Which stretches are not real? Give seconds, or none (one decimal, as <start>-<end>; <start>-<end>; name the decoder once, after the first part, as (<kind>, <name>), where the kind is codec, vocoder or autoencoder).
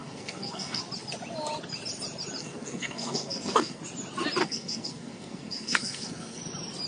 0.0-0.8 (codec, SNAC); 2.4-3.8; 4.4-6.4